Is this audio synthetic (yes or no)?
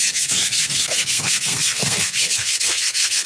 yes